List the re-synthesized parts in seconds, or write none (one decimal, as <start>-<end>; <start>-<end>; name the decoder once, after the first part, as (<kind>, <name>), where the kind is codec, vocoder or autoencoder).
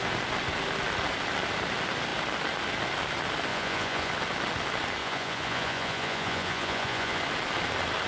3.5-4.1 (vocoder, Vocos); 5.0-7.2